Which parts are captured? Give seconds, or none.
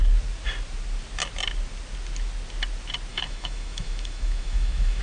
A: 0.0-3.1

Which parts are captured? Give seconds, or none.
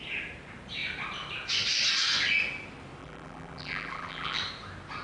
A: 0.0-3.0; 4.4-5.0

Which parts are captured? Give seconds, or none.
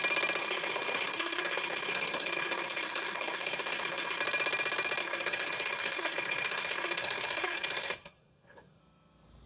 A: 0.0-0.4; 4.2-5.0; 8.8-9.5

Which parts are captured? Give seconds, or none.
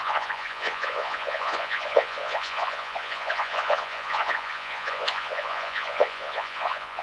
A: none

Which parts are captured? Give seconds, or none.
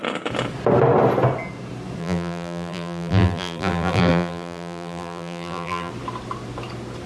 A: 0.0-2.0; 5.9-7.1